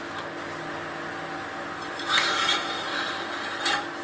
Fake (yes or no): no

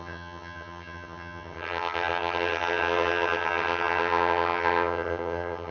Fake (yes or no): yes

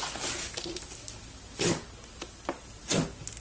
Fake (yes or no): no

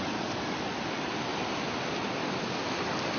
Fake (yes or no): no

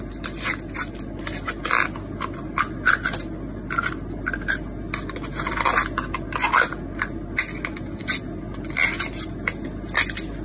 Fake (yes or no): no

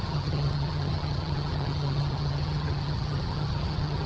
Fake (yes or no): yes